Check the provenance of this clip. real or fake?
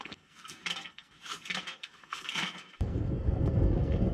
fake